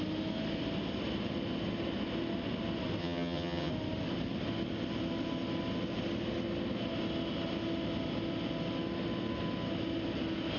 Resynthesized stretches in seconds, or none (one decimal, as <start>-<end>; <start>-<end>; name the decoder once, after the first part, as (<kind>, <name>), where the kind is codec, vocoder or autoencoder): 3.0-3.7 (vocoder, HiFi-GAN)